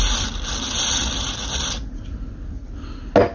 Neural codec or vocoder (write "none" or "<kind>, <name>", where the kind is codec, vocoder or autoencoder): none